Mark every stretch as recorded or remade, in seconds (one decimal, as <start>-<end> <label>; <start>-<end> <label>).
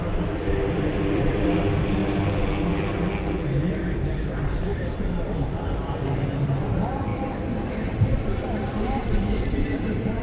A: 0.0-2.0 remade; 2.0-5.0 recorded; 5.0-10.2 remade